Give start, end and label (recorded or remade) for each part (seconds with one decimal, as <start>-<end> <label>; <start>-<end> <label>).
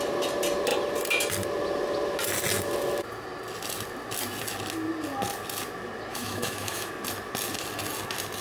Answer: 0.0-6.1 recorded; 6.1-6.9 remade; 6.9-8.4 recorded